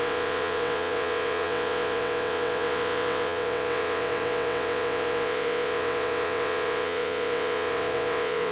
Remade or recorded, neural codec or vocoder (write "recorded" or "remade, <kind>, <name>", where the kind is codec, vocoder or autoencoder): remade, vocoder, WaveNeXt